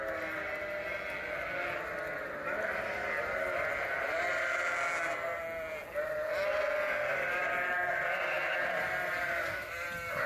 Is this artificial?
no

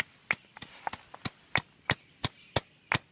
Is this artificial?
no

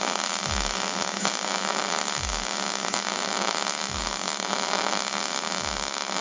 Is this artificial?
yes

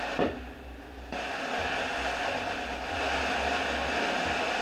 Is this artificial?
no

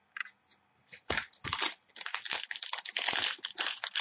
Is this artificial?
no